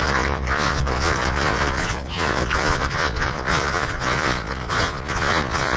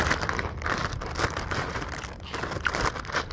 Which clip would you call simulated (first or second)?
first